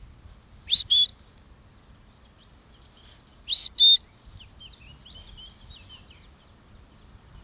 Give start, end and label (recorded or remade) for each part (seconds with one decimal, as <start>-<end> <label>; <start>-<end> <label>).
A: 0.0-7.4 recorded